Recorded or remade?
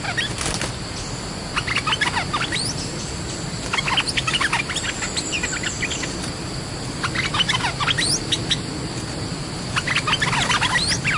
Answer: recorded